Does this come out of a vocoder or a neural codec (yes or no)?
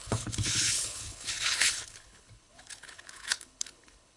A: yes